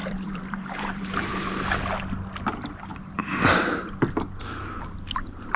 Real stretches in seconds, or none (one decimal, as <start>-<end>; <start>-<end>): 1.3-2.9; 3.8-5.6